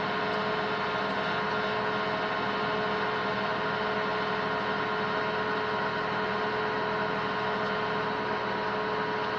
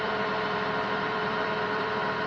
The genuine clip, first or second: first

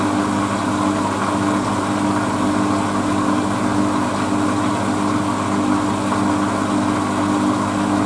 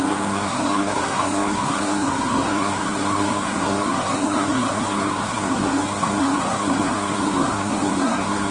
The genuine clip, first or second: first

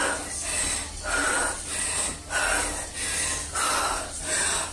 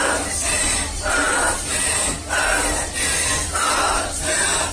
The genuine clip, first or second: first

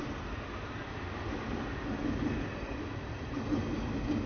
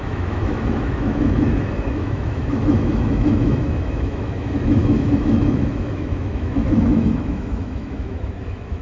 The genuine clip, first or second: first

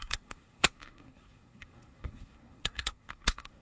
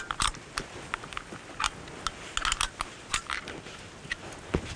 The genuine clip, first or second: second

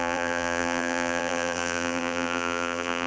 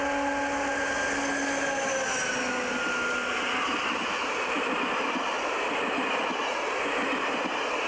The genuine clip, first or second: second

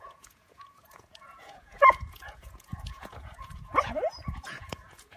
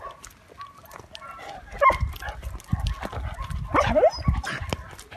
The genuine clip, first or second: second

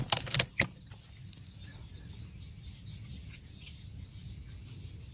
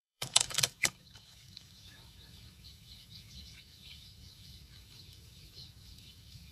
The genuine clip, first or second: first